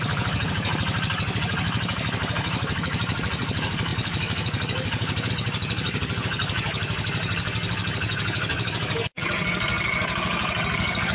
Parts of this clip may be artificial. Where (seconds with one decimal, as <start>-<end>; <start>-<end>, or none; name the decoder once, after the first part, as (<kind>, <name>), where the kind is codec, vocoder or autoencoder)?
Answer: 0.0-11.1 (codec, DAC)